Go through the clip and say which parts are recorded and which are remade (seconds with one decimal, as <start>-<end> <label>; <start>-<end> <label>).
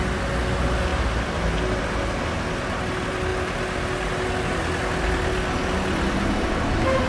0.0-7.1 recorded